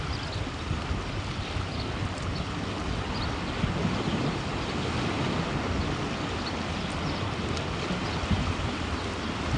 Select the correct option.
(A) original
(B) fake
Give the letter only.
A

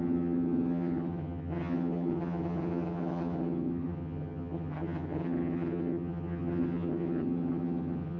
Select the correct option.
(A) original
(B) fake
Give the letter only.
B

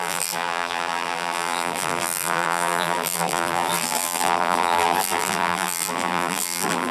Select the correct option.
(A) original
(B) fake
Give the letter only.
B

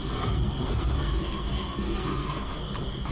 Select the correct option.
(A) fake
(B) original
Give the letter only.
A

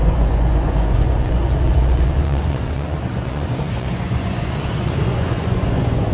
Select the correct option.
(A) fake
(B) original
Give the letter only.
A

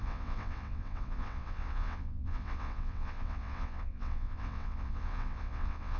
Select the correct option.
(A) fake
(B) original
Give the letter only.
A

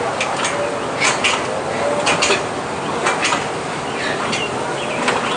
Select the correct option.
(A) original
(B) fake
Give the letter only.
A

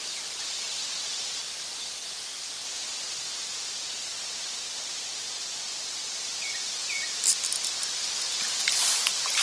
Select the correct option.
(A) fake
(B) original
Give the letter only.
A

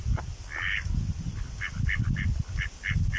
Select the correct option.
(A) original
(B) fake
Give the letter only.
A